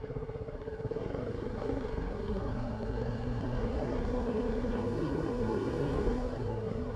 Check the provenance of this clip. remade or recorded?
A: remade